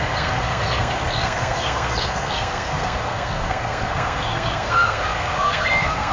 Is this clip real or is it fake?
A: fake